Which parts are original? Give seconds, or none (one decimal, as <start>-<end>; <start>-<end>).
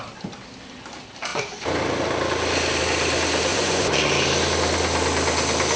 0.0-3.5; 4.1-5.8